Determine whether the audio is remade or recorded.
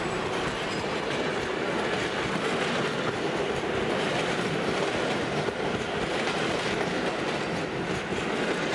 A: recorded